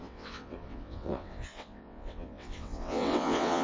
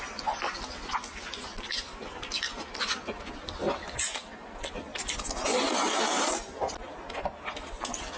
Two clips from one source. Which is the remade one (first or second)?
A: first